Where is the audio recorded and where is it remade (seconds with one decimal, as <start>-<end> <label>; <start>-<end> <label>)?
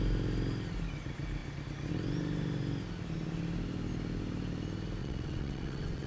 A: 0.0-5.0 recorded; 5.0-6.1 remade